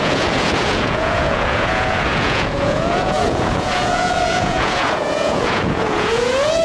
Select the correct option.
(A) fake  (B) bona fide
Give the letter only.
A